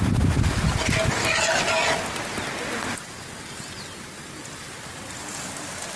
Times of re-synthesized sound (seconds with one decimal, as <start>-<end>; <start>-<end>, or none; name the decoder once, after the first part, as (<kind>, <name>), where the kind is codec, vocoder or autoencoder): none